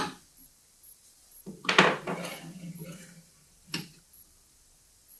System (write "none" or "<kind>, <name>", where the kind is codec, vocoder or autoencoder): vocoder, BigVGAN v2